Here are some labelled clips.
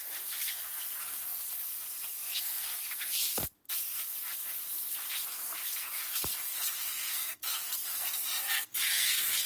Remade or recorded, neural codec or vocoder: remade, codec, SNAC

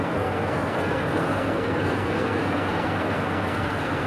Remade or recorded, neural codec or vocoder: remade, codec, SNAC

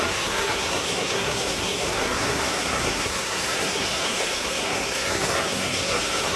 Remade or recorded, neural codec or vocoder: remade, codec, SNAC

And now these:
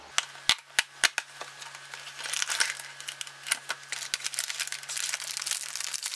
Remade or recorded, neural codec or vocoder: recorded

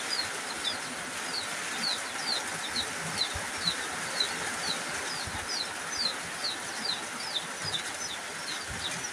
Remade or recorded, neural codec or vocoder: recorded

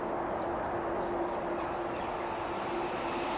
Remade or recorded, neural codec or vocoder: recorded